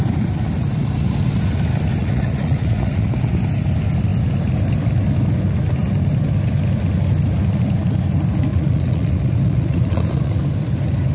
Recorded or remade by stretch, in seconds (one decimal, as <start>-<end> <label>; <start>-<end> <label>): 0.0-2.0 recorded; 2.0-3.3 remade; 3.3-8.5 recorded; 8.5-10.4 remade; 10.4-11.1 recorded